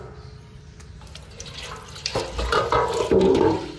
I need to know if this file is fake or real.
real